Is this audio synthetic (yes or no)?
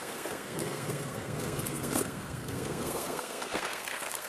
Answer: yes